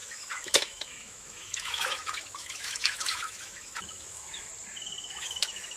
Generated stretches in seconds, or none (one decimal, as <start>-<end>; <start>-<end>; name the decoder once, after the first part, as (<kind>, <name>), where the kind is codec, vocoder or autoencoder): 0.0-4.5 (autoencoder, DAC-VAE); 5.1-5.8